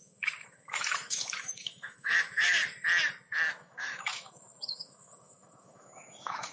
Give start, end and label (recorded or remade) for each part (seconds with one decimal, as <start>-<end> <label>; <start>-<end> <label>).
0.0-2.6 remade; 2.6-3.5 recorded; 3.5-6.5 remade